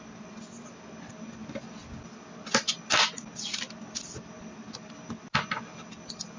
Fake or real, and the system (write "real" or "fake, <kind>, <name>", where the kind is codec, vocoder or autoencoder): real